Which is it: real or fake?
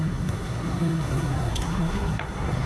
fake